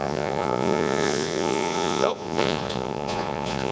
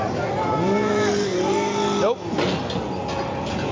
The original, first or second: second